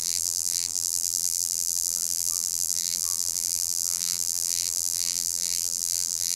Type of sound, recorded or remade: remade